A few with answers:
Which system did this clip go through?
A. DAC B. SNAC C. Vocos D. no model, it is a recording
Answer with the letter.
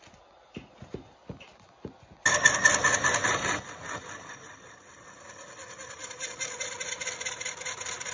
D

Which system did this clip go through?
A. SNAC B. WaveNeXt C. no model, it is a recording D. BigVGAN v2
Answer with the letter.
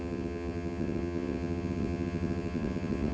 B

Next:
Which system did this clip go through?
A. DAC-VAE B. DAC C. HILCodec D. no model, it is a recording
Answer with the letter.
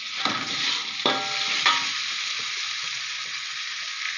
D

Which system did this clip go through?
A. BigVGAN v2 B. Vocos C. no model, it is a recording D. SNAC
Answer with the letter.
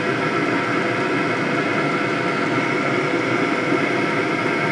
C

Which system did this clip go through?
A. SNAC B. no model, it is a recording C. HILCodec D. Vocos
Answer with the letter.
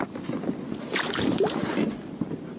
B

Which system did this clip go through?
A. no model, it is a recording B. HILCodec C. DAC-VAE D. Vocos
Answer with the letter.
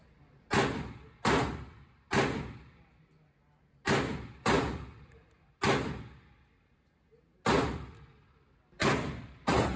A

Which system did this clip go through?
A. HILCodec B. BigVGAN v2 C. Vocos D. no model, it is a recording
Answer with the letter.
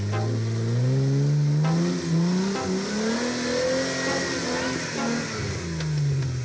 D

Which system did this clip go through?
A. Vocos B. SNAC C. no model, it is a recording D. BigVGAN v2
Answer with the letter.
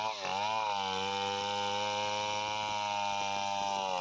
C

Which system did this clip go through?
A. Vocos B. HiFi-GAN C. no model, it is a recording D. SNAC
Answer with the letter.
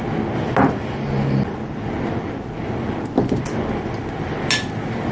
C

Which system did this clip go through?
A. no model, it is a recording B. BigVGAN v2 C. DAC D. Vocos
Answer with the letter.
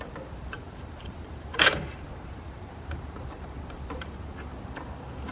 B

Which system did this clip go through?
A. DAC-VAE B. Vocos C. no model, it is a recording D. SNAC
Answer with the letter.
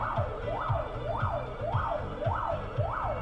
C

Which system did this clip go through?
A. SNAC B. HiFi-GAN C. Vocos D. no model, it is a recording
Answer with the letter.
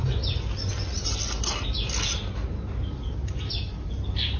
D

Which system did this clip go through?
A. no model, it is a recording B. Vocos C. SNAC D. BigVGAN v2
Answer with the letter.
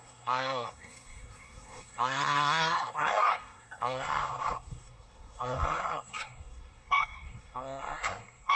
C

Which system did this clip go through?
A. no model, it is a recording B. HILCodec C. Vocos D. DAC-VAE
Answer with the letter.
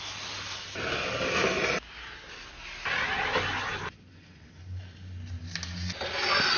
A